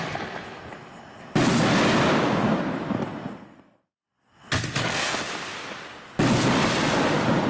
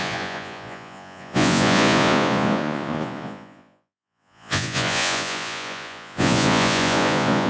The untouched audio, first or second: first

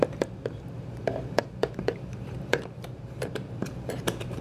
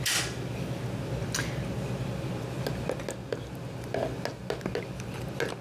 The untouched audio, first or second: second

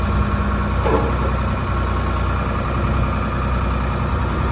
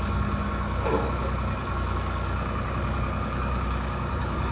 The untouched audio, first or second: first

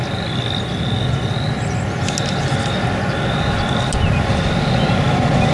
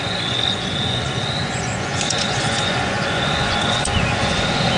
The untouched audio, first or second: first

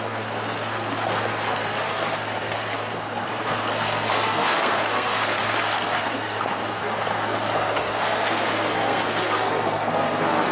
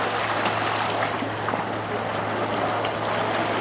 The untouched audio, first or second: second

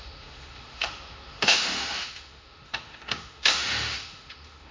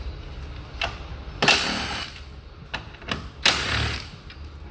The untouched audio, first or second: second